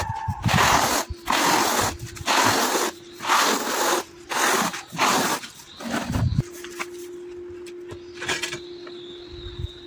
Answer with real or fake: real